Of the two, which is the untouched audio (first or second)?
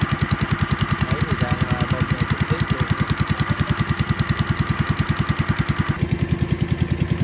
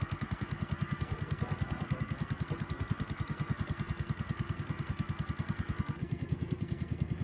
first